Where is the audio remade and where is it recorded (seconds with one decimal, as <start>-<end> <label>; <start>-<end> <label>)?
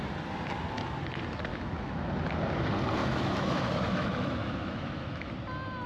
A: 0.0-1.5 recorded; 1.5-2.1 remade; 2.1-3.0 recorded; 3.0-5.3 remade; 5.3-5.9 recorded